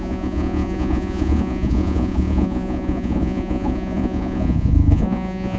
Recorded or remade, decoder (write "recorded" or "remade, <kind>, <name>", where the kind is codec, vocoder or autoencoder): remade, vocoder, Vocos